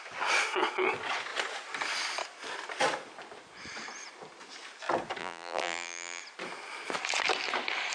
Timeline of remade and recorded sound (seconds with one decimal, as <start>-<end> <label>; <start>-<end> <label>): 0.0-5.2 recorded; 5.2-6.2 remade; 6.2-7.9 recorded